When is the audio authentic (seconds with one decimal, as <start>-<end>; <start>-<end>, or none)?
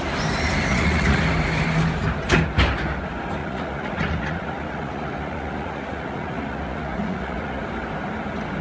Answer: 0.0-0.7; 1.2-3.4; 7.6-8.6